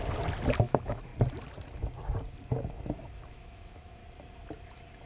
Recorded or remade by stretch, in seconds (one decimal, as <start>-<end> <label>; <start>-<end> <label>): 0.0-0.6 recorded; 0.6-1.1 remade; 1.1-3.3 recorded; 3.3-4.0 remade; 4.0-5.1 recorded